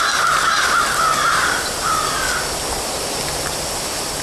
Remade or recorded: recorded